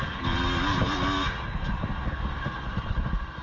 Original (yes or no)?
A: yes